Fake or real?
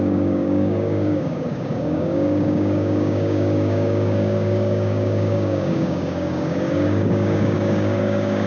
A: fake